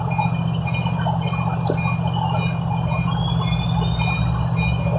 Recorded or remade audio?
recorded